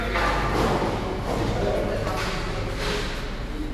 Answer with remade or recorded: recorded